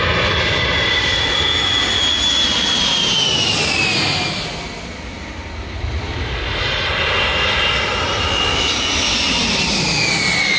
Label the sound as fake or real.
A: real